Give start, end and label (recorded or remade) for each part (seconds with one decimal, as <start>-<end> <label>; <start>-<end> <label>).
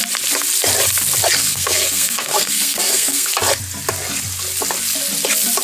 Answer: 0.0-1.4 recorded; 1.4-3.3 remade; 3.3-5.6 recorded